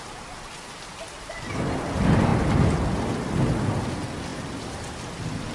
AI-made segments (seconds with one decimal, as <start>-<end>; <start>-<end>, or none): none

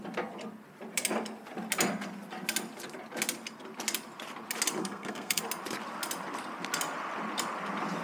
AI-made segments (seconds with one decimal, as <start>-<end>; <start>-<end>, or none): 4.8-5.4

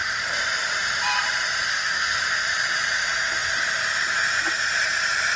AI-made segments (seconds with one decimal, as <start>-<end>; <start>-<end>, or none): 1.7-2.2

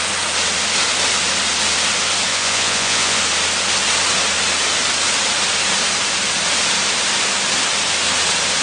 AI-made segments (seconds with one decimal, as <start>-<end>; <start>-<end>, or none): 2.3-3.2

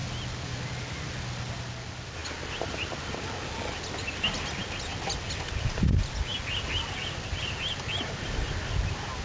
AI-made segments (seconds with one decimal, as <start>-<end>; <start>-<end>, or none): none

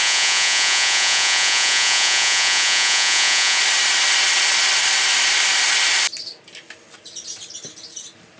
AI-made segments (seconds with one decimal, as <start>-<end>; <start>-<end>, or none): 0.0-3.6